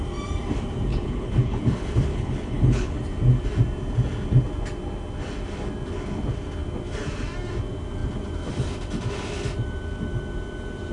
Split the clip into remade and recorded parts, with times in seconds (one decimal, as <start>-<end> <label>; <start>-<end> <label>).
0.0-0.9 recorded; 0.9-1.6 remade; 1.6-2.1 recorded; 2.1-3.0 remade; 3.0-10.9 recorded